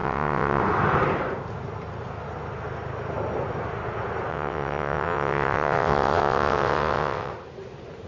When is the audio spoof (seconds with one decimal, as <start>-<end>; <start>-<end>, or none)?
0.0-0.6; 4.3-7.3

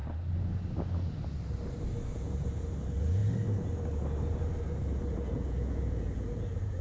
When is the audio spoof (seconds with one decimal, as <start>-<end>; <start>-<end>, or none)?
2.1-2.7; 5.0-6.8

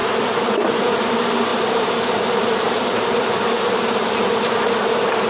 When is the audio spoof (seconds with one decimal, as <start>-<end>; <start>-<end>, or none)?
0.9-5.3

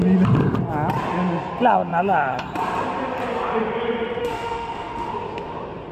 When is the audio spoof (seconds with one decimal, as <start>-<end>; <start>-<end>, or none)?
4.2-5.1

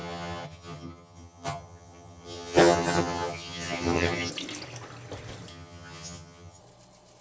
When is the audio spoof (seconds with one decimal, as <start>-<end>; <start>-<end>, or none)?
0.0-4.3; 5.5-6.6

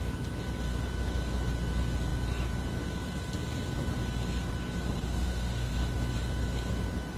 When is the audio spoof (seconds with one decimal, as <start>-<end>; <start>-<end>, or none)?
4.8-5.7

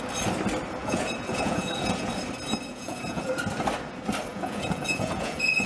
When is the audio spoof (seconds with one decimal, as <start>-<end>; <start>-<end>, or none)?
0.8-2.1; 2.7-3.3; 4.3-5.7